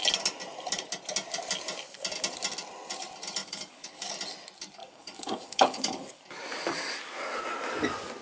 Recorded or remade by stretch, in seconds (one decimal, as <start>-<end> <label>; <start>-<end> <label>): 0.0-3.4 recorded; 3.4-4.1 remade; 4.1-4.8 recorded; 4.8-6.2 remade; 6.2-8.2 recorded